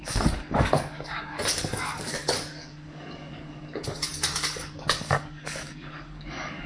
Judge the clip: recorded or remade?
remade